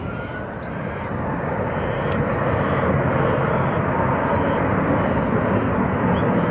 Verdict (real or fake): real